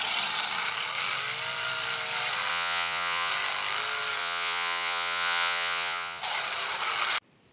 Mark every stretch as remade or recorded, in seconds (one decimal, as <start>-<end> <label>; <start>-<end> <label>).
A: 0.0-2.5 recorded; 2.5-3.3 remade; 3.3-4.2 recorded; 4.2-6.2 remade; 6.2-7.5 recorded